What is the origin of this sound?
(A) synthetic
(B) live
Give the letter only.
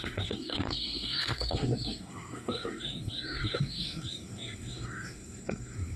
A